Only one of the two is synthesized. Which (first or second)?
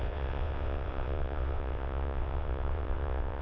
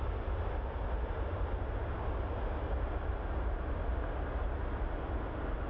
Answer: first